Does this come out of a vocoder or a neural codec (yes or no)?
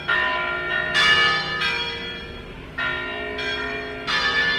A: no